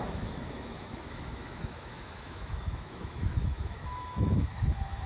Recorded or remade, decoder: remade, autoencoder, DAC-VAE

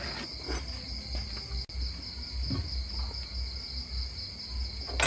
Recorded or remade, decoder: recorded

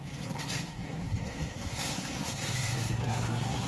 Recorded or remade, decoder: remade, codec, SNAC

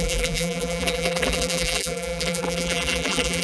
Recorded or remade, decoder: remade, vocoder, BigVGAN v2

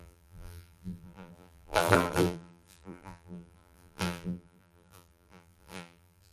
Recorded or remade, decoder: remade, vocoder, BigVGAN v2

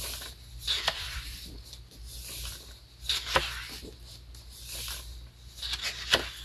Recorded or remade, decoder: recorded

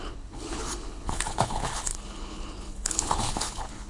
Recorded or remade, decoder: remade, codec, HILCodec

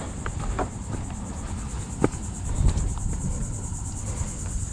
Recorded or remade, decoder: recorded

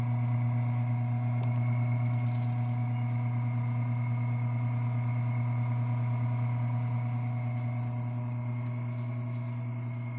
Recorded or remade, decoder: recorded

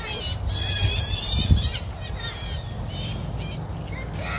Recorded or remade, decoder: recorded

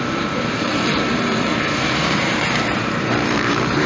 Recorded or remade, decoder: remade, vocoder, BigVGAN v2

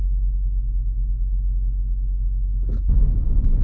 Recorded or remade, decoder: recorded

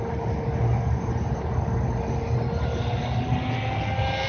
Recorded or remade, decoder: recorded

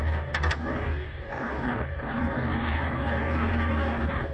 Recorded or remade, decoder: remade, codec, DAC